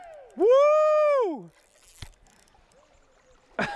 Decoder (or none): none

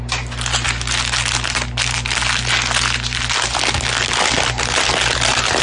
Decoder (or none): none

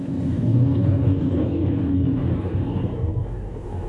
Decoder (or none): codec, DAC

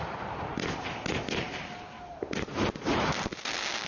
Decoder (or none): none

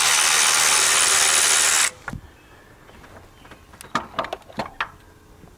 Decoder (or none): none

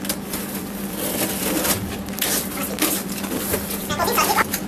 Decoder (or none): none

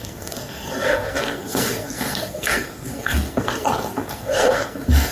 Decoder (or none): codec, SNAC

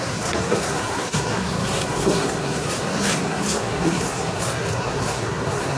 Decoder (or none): codec, SNAC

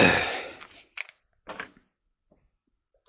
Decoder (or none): none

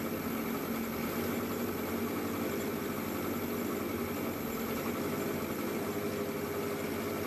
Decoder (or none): none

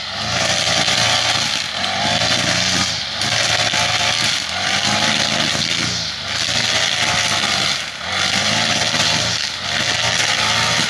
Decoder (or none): none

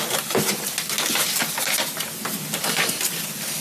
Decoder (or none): none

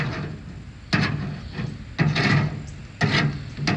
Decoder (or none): none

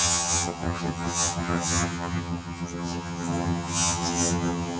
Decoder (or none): vocoder, HiFi-GAN